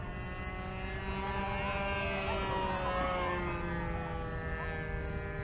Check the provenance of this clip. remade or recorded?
recorded